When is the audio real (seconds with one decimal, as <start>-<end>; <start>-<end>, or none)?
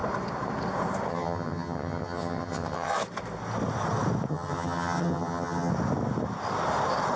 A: 0.0-1.1; 2.9-4.3; 5.7-7.2